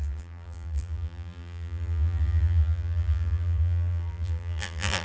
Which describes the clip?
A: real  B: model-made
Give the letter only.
B